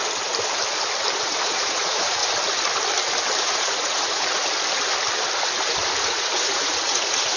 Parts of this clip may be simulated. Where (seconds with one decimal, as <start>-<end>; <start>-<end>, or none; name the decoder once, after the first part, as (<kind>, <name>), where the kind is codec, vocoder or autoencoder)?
1.2-2.2 (vocoder, Vocos); 3.4-4.4; 6.0-7.4

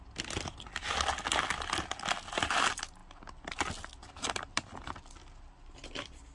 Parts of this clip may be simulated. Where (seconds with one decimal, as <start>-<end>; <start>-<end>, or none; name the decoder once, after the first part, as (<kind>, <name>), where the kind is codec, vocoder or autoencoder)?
none

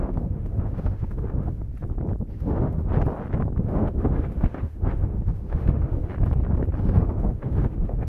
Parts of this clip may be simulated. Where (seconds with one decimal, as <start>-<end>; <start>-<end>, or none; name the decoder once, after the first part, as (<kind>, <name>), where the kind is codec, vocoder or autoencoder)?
0.0-1.7 (autoencoder, DAC-VAE); 2.3-2.9; 3.6-6.1; 6.8-8.1

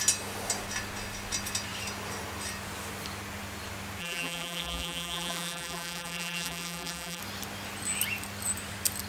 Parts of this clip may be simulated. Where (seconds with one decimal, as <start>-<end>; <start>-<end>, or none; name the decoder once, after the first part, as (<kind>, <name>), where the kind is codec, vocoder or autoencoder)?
4.0-7.2 (vocoder, BigVGAN v2)